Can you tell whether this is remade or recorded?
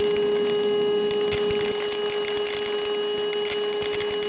recorded